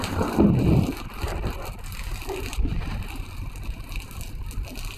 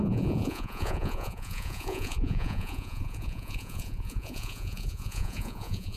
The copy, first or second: second